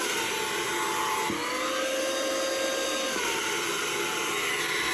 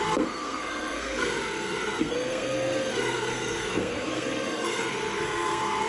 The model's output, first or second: second